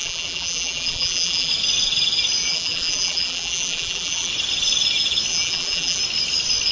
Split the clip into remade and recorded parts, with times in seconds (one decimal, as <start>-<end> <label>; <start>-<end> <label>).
0.0-1.5 remade; 1.5-2.4 recorded; 2.4-4.3 remade; 4.3-5.3 recorded; 5.3-6.0 remade; 6.0-6.7 recorded